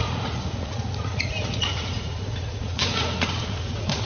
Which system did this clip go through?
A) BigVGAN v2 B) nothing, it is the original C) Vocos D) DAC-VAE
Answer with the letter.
C